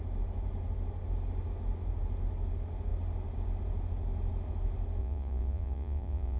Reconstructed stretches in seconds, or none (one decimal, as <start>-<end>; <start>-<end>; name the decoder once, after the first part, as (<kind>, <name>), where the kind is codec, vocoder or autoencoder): 5.0-6.4 (vocoder, Vocos)